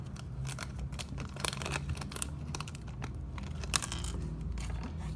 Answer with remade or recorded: recorded